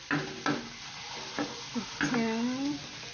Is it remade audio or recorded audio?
recorded